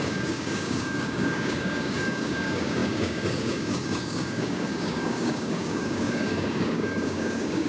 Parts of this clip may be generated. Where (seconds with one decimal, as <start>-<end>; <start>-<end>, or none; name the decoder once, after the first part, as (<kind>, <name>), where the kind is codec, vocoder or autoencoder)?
0.0-7.7 (codec, DAC)